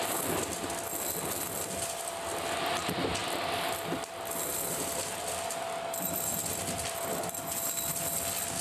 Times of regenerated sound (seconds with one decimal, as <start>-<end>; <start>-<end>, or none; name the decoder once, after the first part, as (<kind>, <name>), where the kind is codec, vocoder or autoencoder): none